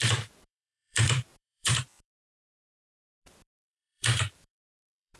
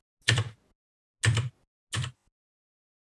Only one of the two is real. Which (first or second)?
second